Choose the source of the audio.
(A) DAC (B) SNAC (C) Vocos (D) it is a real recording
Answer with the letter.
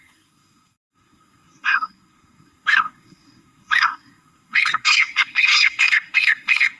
B